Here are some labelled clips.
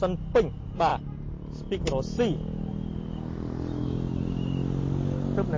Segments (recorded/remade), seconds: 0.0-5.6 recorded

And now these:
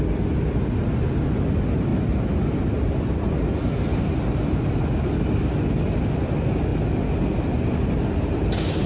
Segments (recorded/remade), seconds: 0.0-8.9 recorded

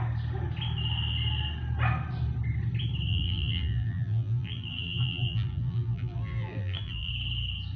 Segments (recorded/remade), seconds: 0.0-3.1 recorded; 3.1-7.1 remade; 7.1-7.8 recorded

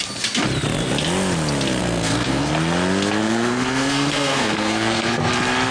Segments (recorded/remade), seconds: 0.0-1.8 recorded; 1.8-2.5 remade; 2.5-3.2 recorded; 3.2-5.3 remade; 5.3-5.7 recorded

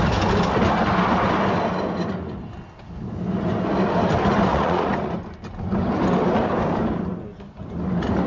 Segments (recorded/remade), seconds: 0.0-4.5 recorded; 4.5-5.1 remade; 5.1-8.3 recorded

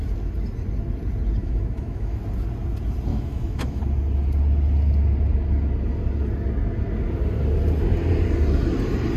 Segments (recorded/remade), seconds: 0.0-1.4 recorded; 1.4-2.2 remade; 2.2-3.1 recorded; 3.1-3.8 remade; 3.8-9.2 recorded

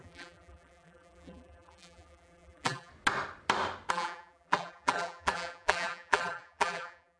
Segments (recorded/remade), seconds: 0.0-2.9 remade; 2.9-3.9 recorded; 3.9-7.2 remade